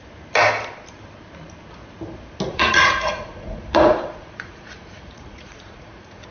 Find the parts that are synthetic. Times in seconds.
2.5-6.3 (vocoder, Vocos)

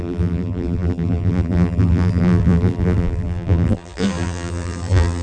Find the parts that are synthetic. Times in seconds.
0.0-5.2 (vocoder, BigVGAN v2)

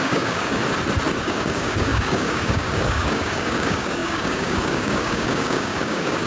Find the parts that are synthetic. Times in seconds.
0.0-0.6 (codec, DAC); 1.2-6.3